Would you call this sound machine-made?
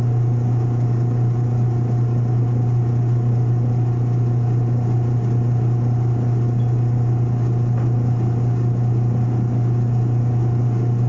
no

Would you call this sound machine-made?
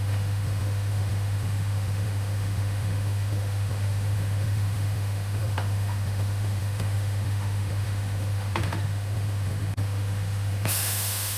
yes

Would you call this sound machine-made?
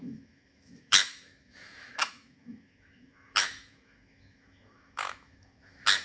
yes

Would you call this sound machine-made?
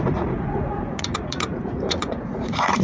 yes